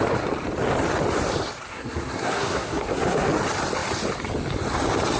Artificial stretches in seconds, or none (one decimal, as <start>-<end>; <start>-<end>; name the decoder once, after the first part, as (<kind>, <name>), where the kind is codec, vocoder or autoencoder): 1.7-3.3 (codec, SNAC)